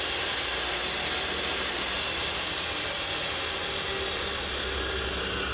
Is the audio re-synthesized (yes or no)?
no